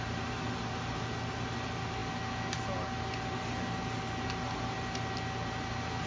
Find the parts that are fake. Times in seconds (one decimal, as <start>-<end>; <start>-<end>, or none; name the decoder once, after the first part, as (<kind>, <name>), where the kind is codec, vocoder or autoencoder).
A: none